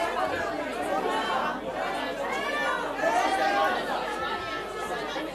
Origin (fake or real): real